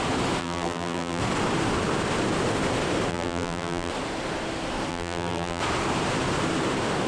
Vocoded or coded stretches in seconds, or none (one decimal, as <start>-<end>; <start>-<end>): 0.4-1.2; 3.1-3.9; 4.9-5.6